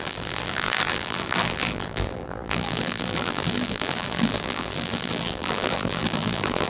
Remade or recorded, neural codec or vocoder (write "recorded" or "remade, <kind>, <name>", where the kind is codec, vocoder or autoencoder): remade, vocoder, BigVGAN v2